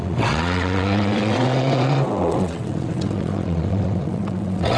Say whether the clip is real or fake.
fake